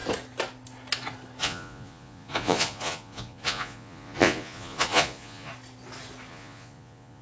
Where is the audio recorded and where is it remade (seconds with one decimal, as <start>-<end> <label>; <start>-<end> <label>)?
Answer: 0.0-1.4 recorded; 1.4-5.5 remade; 5.5-6.3 recorded; 6.3-7.2 remade